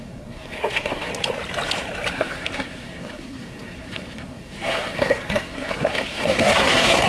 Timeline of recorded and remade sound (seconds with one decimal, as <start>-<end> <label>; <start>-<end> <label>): 0.0-1.1 remade; 1.1-2.1 recorded; 2.1-7.1 remade